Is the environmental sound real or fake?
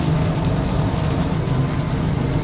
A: real